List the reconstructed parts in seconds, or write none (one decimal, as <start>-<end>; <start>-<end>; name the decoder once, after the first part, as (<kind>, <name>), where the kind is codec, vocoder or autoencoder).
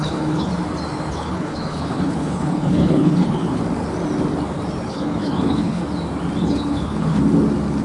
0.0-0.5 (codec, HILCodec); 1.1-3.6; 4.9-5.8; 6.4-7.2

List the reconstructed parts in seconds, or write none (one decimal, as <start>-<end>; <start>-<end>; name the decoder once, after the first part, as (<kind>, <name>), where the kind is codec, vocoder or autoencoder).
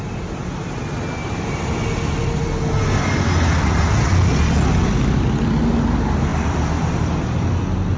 none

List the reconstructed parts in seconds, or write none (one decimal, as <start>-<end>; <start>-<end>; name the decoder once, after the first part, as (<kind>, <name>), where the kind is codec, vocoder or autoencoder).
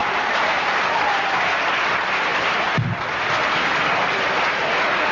0.0-1.0 (vocoder, BigVGAN v2)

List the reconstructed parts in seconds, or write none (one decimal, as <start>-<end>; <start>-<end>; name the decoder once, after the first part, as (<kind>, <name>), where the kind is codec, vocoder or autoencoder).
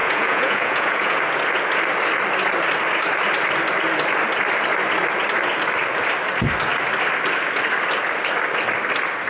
0.0-1.2 (vocoder, Vocos)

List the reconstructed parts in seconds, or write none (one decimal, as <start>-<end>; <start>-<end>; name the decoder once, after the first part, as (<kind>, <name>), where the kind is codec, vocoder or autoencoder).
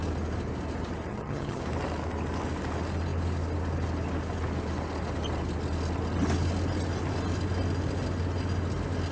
1.1-1.6 (vocoder, HiFi-GAN)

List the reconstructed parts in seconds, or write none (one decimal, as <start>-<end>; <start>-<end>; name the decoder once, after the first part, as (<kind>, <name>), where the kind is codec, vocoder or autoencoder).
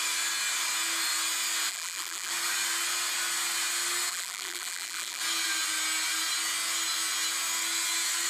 1.7-2.3 (vocoder, BigVGAN v2); 4.1-5.2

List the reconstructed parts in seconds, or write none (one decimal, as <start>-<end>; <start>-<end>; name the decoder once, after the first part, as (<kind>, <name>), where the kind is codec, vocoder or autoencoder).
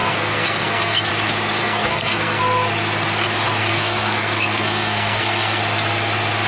0.0-1.1 (codec, SNAC); 1.6-2.4; 3.6-5.6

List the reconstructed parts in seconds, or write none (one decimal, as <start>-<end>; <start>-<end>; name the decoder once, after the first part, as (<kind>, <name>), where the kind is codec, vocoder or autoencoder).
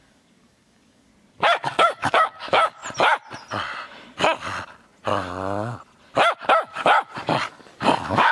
0.0-1.1 (codec, DAC); 1.7-2.8; 7.5-8.3